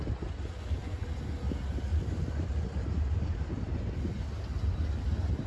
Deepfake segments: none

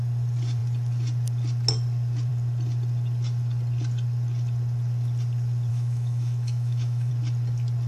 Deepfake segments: 5.7-7.1 (autoencoder, DAC-VAE)

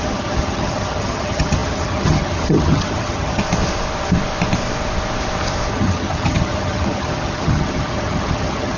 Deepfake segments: 0.0-3.4 (vocoder, HiFi-GAN); 5.7-8.8

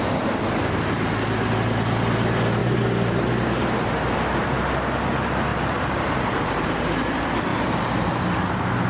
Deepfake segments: 2.6-4.7 (vocoder, BigVGAN v2); 5.5-7.1; 7.5-8.1

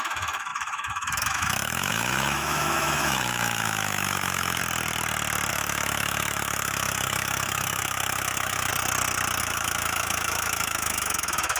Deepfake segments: 0.0-4.6 (autoencoder, DAC-VAE); 5.5-8.7; 9.4-11.6